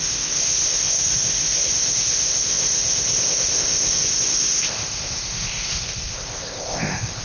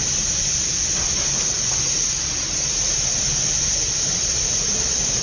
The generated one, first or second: first